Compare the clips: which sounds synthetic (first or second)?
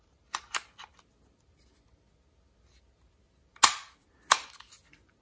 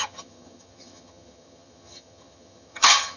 second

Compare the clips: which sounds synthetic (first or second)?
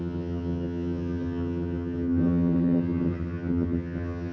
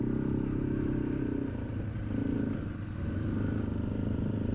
first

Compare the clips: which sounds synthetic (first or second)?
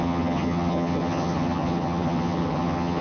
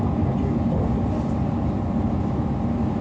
first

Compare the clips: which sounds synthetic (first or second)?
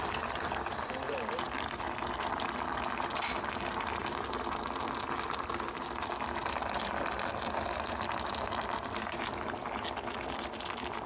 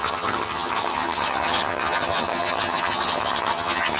second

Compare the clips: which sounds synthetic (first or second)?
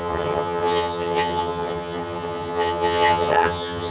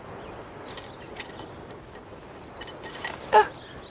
first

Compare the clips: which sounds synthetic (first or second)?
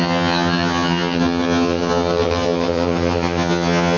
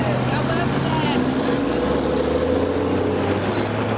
first